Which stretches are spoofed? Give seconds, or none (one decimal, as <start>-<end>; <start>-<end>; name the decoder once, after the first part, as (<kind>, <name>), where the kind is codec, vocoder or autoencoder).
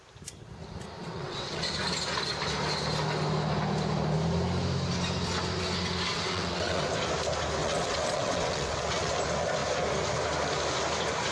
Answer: 1.0-1.7 (vocoder, WaveNeXt); 6.1-6.8; 7.6-9.1